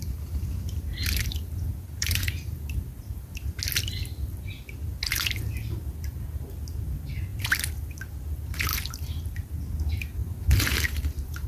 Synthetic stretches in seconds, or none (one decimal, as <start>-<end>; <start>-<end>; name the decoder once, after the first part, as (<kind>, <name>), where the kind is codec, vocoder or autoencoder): 0.0-3.6 (vocoder, BigVGAN v2); 7.3-8.0; 8.7-9.5; 10.2-11.5